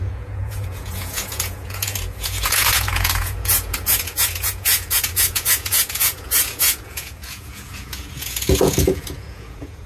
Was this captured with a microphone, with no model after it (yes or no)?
no